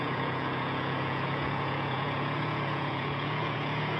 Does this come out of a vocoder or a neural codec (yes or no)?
yes